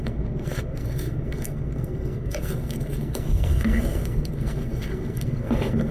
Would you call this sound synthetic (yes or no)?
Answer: yes